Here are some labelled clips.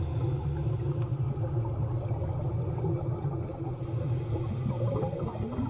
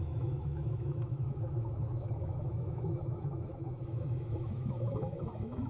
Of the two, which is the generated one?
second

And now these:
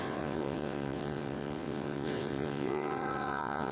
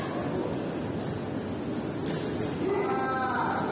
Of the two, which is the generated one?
first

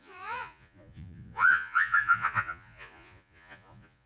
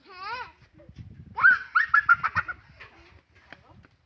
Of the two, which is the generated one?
first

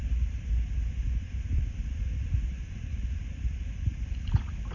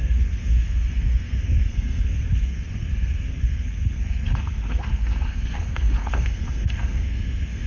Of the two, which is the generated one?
second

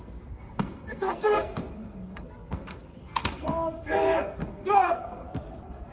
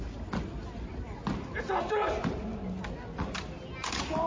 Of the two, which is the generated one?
first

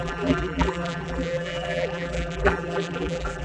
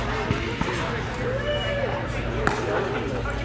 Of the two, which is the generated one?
first